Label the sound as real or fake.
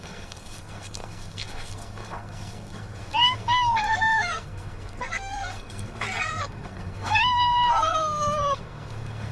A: fake